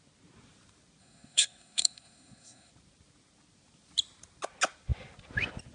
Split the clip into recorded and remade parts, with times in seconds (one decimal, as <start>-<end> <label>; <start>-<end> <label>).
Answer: 0.0-1.0 recorded; 1.0-2.7 remade; 2.7-5.7 recorded